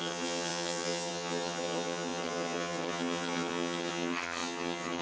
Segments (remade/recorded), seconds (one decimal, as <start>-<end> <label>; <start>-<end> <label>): 0.0-5.0 remade